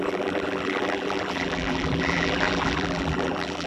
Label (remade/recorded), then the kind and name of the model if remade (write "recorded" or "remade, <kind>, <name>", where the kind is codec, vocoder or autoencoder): remade, vocoder, BigVGAN v2